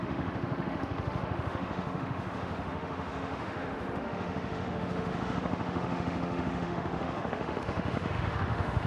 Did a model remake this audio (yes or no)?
yes